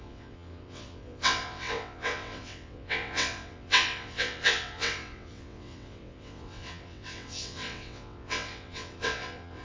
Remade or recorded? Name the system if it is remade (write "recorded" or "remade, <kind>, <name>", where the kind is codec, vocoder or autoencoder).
remade, vocoder, WaveNeXt